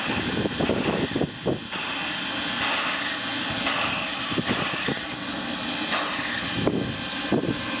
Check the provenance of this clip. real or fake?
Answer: real